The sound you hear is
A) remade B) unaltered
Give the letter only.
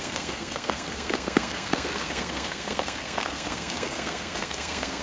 A